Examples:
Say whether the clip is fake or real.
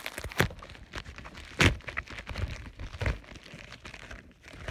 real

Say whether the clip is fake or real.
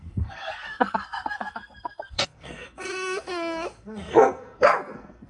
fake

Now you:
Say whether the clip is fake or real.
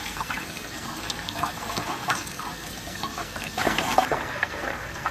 fake